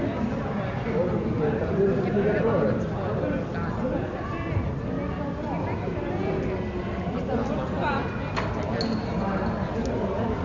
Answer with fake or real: real